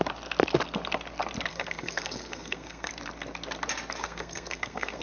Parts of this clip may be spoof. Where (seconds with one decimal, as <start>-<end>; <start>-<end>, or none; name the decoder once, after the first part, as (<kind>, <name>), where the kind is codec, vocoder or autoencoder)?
1.5-2.9 (codec, SNAC); 4.0-5.0